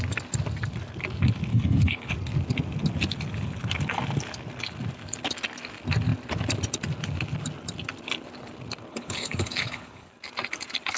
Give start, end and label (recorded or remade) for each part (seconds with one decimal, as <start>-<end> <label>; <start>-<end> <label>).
0.0-1.5 recorded; 1.5-2.1 remade; 2.1-8.9 recorded; 8.9-10.1 remade; 10.1-11.0 recorded